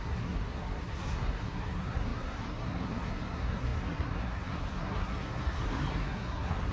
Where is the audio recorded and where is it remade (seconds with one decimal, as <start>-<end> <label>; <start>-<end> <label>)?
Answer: 0.0-6.7 remade